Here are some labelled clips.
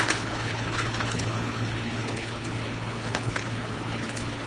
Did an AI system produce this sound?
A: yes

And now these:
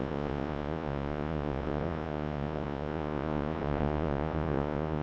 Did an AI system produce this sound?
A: yes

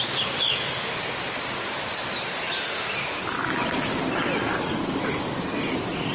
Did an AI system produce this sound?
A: no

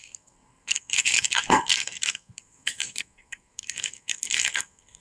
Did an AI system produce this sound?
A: yes